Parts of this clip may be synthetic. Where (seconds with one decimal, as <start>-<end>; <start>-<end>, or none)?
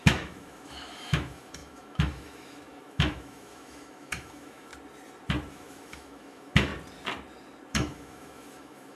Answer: 0.0-4.7; 5.5-6.7; 7.7-8.9